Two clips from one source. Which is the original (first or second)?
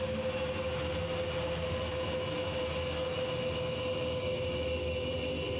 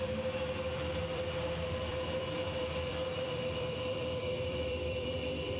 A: first